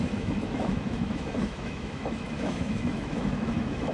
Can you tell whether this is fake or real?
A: fake